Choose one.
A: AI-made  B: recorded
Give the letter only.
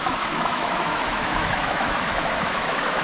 A